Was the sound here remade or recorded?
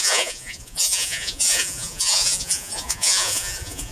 remade